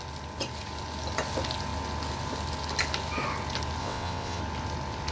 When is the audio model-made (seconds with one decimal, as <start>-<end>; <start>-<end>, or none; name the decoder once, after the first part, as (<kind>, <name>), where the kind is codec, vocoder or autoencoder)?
3.8-4.4 (vocoder, WaveNeXt)